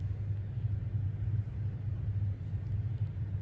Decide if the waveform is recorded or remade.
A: recorded